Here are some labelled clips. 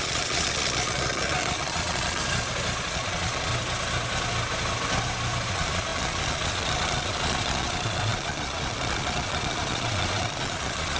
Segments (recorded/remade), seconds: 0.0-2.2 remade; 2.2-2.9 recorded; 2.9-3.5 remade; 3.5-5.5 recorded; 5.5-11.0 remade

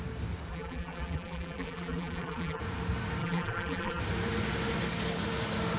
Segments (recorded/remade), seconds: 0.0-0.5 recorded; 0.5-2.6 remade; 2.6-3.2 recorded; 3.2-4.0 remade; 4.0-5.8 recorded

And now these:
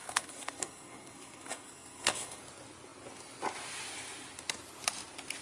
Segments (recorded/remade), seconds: 0.0-2.4 remade; 2.4-5.4 recorded

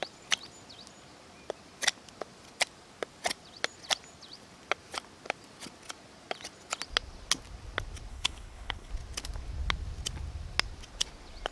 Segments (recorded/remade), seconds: 0.0-8.1 recorded; 8.1-8.9 remade; 8.9-11.5 recorded

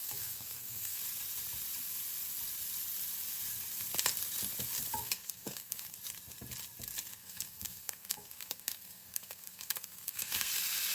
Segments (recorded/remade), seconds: 0.0-1.0 remade; 1.0-5.0 recorded; 5.0-5.9 remade; 5.9-7.1 recorded; 7.1-10.5 remade; 10.5-10.9 recorded

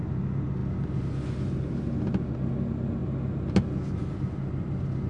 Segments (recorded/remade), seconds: 0.0-5.1 recorded

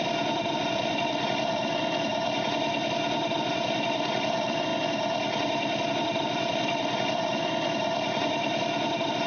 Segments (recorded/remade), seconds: 0.0-2.1 remade; 2.1-3.5 recorded; 3.5-4.7 remade; 4.7-5.9 recorded; 5.9-9.3 remade